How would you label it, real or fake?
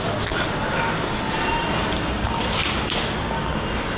real